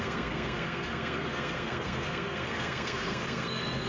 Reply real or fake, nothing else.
fake